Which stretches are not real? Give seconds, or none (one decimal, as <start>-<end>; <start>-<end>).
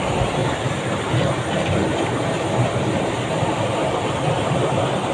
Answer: 0.4-1.1